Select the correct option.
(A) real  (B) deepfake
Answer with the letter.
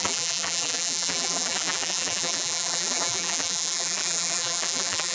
B